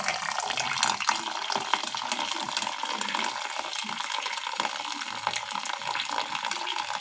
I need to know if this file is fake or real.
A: real